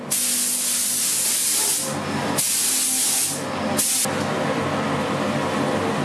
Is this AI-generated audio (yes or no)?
no